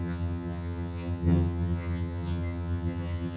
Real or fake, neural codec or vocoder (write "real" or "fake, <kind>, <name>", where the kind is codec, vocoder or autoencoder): fake, vocoder, HiFi-GAN